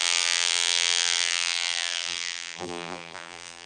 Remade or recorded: remade